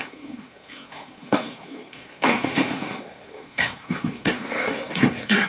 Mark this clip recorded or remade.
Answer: remade